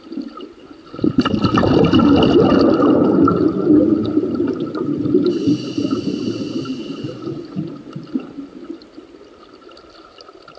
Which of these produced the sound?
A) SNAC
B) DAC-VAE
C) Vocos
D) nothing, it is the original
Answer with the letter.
D